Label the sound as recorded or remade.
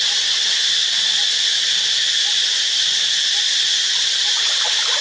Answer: recorded